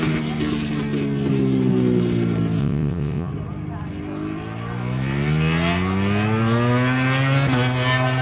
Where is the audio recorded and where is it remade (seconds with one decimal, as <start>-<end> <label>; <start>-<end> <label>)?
0.0-2.6 recorded; 2.6-3.3 remade; 3.3-8.2 recorded